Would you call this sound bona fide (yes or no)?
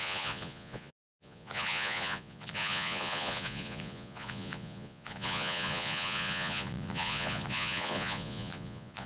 no